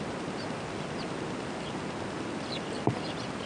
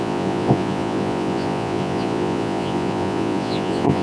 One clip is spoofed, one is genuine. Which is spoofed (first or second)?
second